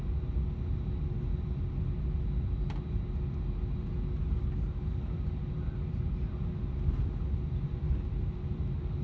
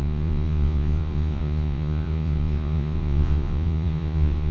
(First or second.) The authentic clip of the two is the first